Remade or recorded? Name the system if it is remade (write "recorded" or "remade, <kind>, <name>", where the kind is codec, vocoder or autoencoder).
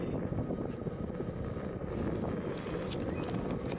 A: recorded